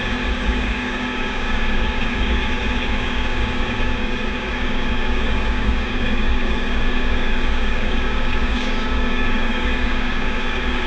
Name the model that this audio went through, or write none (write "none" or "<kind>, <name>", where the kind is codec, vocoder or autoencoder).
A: codec, DAC